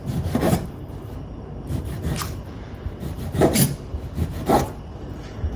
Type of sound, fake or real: real